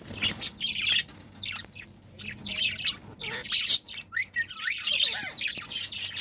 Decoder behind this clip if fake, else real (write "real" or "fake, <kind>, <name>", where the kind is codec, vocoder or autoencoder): real